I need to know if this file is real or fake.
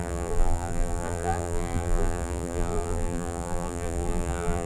fake